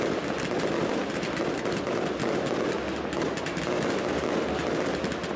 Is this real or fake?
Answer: real